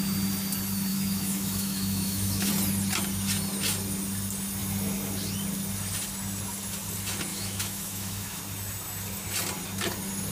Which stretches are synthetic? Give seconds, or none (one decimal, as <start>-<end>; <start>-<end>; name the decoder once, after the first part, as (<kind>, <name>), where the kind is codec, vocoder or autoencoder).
0.9-2.5 (autoencoder, DAC-VAE); 7.3-8.4